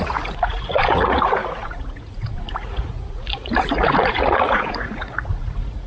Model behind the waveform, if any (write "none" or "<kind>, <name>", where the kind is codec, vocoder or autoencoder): vocoder, Vocos